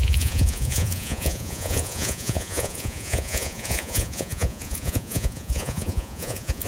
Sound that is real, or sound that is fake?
fake